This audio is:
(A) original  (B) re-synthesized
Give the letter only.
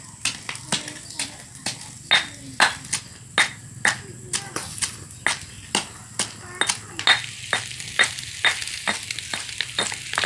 A